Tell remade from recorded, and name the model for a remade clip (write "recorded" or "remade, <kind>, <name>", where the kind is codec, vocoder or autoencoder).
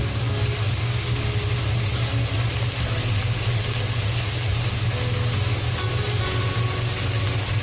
recorded